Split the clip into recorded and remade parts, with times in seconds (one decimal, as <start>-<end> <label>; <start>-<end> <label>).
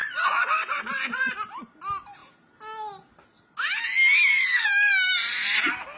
0.0-1.3 remade; 1.3-6.0 recorded